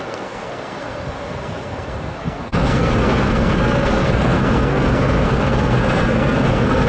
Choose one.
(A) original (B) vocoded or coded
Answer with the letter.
B